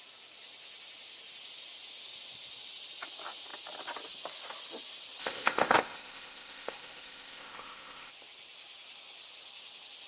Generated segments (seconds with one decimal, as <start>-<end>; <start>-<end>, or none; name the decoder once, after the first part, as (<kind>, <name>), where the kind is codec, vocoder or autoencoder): 5.2-8.1 (codec, ZipCodec)